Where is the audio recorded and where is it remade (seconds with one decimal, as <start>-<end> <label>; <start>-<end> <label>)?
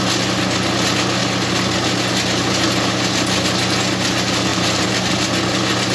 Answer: 0.0-4.5 recorded; 4.5-5.1 remade; 5.1-5.9 recorded